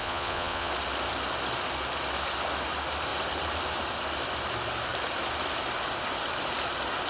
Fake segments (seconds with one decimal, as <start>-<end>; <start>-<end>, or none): 0.0-0.7